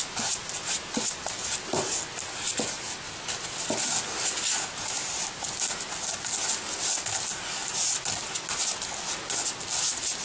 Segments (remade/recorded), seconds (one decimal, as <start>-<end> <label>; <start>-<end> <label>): 0.0-10.2 recorded